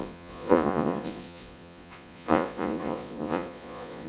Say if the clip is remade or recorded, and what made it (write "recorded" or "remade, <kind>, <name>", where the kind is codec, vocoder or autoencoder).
remade, vocoder, Vocos